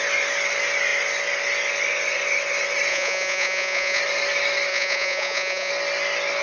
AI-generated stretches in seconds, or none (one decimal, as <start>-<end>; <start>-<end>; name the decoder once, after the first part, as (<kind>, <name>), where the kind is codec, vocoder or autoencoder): 2.9-4.0 (vocoder, Vocos); 4.7-5.7